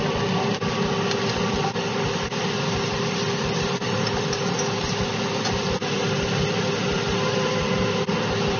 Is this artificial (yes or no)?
no